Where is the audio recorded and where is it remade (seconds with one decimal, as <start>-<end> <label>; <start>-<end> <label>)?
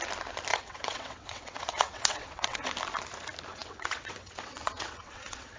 0.0-0.5 recorded; 0.5-2.7 remade; 2.7-3.5 recorded; 3.5-5.6 remade